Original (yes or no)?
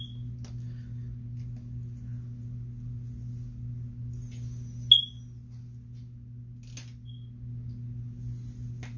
yes